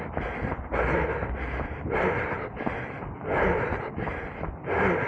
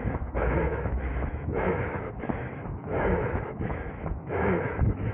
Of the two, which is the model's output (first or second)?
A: second